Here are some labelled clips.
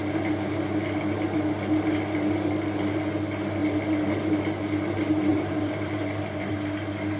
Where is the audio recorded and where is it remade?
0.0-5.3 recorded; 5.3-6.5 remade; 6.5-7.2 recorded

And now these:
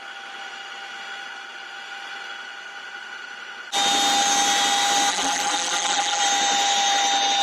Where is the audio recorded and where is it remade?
0.0-5.1 recorded; 5.1-6.2 remade; 6.2-7.4 recorded

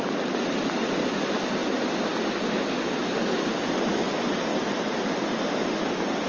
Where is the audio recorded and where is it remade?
0.0-6.3 recorded

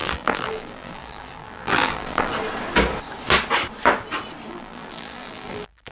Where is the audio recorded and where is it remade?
0.0-2.3 remade; 2.3-4.5 recorded; 4.5-5.9 remade

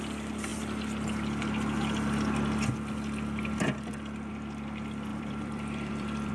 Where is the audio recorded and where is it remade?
0.0-5.1 recorded; 5.1-6.3 remade

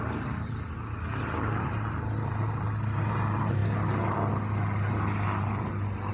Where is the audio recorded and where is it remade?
0.0-6.1 recorded

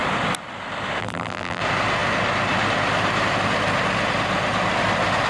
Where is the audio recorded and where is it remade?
0.0-1.0 recorded; 1.0-1.6 remade; 1.6-5.3 recorded